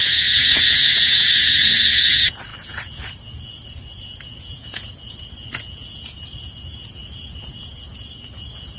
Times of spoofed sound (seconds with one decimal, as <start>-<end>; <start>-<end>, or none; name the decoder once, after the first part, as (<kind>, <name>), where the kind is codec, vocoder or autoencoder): 0.0-8.8 (vocoder, Vocos)